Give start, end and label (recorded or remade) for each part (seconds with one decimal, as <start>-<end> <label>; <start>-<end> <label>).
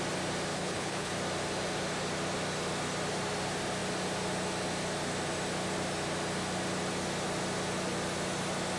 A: 0.0-0.5 recorded; 0.5-1.1 remade; 1.1-8.8 recorded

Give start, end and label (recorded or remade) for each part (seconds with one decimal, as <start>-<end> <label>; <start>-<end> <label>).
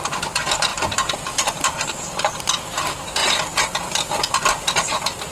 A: 0.0-0.7 recorded; 0.7-1.6 remade; 1.6-5.3 recorded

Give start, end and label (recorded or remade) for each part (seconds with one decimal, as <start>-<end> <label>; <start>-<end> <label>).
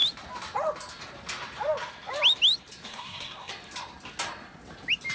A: 0.0-2.9 recorded; 2.9-3.5 remade; 3.5-5.1 recorded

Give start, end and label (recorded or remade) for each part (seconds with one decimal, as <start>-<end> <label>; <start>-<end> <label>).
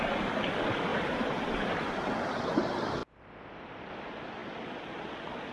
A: 0.0-0.9 recorded; 0.9-1.9 remade; 1.9-3.0 recorded; 3.0-3.9 remade; 3.9-5.5 recorded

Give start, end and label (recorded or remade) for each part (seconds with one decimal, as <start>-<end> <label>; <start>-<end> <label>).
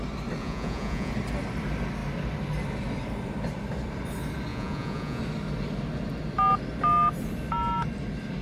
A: 0.0-0.4 recorded; 0.4-1.1 remade; 1.1-4.5 recorded; 4.5-5.2 remade; 5.2-8.4 recorded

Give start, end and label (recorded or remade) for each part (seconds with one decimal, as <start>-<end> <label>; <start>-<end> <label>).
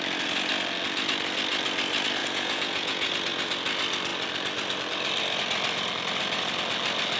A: 0.0-2.2 recorded; 2.2-3.1 remade; 3.1-7.2 recorded